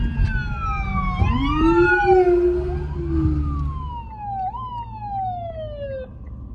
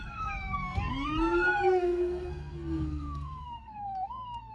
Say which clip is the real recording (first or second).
first